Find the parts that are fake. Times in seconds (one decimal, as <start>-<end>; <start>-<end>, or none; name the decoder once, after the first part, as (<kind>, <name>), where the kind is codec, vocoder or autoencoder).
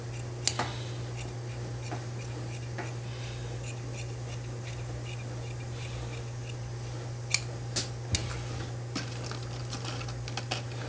none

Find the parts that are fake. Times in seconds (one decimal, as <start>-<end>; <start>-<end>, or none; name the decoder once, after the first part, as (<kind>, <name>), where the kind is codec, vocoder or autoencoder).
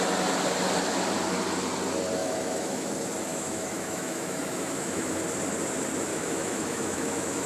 2.2-2.9 (autoencoder, DAC-VAE); 3.3-5.2; 6.1-7.5